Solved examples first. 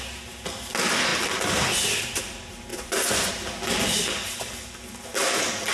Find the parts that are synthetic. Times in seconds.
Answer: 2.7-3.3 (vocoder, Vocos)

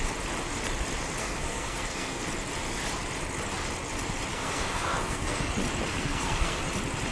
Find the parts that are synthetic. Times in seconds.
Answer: 1.2-2.2 (codec, SNAC); 4.3-5.5; 5.9-6.6

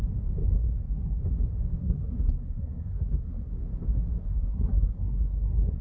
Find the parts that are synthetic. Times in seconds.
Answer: 0.6-1.2 (codec, SNAC); 1.8-3.5; 4.2-5.8

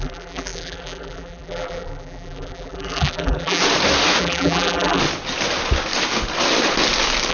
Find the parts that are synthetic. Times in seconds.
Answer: 0.0-3.6 (vocoder, BigVGAN v2); 4.2-5.0

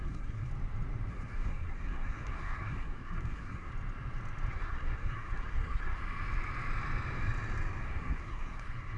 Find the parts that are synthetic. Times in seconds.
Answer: 0.0-0.5 (codec, SNAC); 1.1-3.7; 4.5-6.0; 7.8-9.0

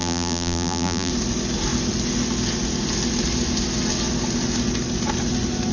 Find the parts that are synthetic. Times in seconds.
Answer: 0.0-1.1 (vocoder, BigVGAN v2)